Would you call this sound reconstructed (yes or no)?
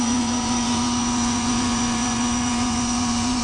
yes